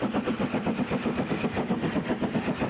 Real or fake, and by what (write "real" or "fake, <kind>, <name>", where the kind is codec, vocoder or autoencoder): real